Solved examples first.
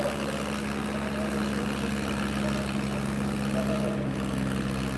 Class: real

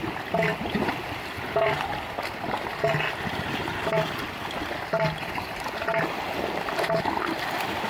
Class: real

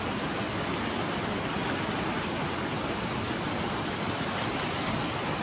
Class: real